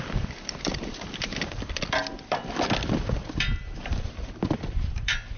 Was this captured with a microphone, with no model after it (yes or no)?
no